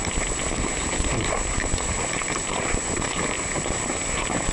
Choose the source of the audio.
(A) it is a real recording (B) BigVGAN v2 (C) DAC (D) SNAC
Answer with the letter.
A